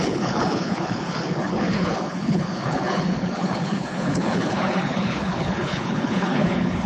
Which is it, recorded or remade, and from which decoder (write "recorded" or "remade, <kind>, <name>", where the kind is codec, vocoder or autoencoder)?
remade, codec, HILCodec